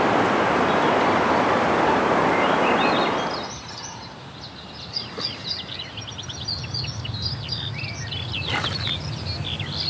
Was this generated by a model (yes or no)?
no